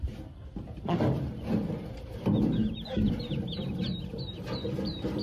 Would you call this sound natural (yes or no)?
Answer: no